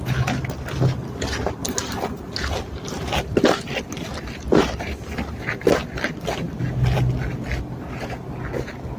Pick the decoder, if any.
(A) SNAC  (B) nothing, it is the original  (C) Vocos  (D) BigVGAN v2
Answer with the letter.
D